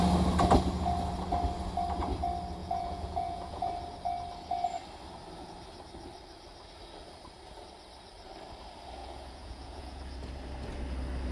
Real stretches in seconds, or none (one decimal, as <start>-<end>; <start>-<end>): 0.0-2.6; 3.7-9.0; 10.0-11.3